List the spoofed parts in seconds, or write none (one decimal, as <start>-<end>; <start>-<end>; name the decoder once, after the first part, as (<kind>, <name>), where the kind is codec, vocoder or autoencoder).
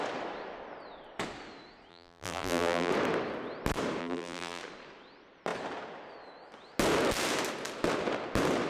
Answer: 1.9-2.9 (vocoder, BigVGAN v2); 4.0-4.6